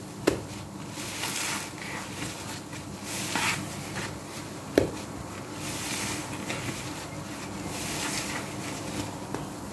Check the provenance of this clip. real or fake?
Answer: real